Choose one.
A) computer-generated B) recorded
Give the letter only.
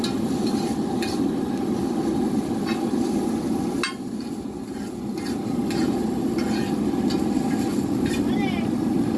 B